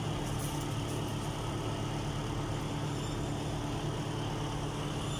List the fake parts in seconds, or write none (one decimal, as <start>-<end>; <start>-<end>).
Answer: none

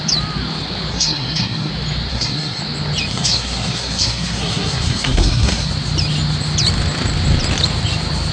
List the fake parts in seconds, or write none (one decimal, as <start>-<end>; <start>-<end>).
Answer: 0.9-1.7; 2.1-2.6; 3.1-5.7

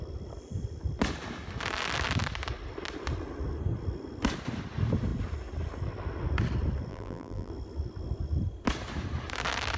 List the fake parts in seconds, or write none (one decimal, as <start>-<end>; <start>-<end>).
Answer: 6.9-7.5

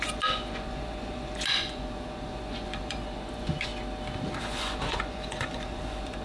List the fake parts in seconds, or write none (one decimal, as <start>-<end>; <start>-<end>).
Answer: 0.0-3.7; 4.4-6.2

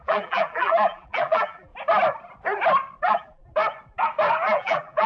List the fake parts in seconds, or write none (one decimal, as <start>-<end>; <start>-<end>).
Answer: 0.0-1.7; 3.0-3.4; 4.5-5.1

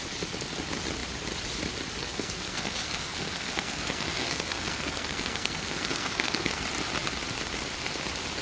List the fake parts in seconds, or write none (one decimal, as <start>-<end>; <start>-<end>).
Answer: 2.0-6.6

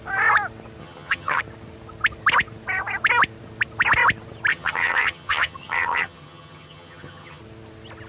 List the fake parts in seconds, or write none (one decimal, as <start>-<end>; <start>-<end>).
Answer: 0.8-1.4; 4.5-7.4